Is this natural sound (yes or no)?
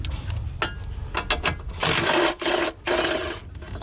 yes